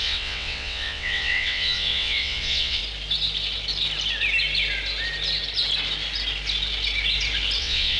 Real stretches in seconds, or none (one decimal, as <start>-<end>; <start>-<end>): 2.8-7.6